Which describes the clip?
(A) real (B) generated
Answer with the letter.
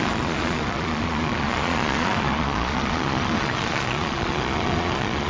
B